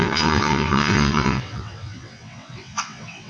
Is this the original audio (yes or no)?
no